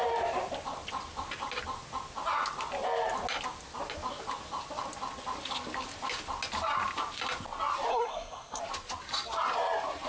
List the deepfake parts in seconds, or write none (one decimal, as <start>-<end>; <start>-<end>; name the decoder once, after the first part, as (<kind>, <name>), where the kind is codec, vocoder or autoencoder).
7.9-8.6 (codec, SNAC)